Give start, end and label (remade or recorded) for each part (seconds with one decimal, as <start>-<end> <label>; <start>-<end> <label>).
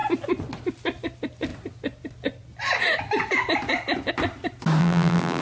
0.0-4.8 recorded; 4.8-5.4 remade